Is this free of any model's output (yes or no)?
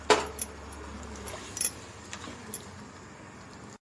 yes